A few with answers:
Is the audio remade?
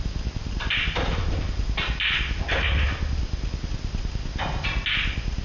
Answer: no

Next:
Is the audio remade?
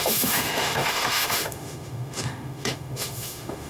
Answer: yes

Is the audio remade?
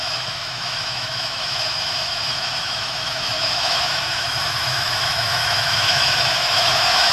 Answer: yes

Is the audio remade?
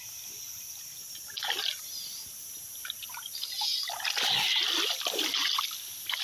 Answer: no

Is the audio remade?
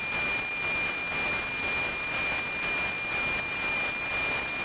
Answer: no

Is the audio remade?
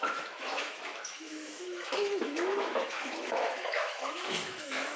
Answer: yes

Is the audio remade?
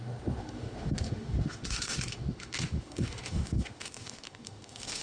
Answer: yes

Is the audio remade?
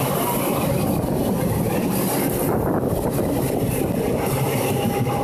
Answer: no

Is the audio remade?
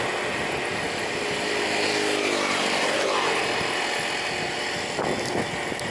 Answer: no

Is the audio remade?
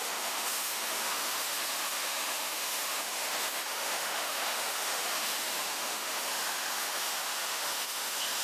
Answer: yes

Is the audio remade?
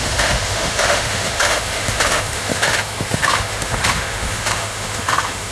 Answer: yes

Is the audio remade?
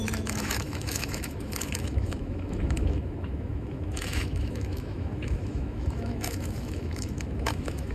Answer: yes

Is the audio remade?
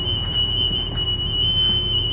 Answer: yes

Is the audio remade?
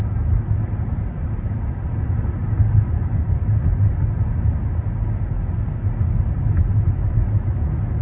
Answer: no